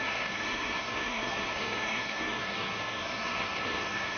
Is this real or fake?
fake